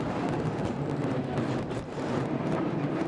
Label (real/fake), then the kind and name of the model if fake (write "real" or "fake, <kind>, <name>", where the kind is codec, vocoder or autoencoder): fake, vocoder, BigVGAN v2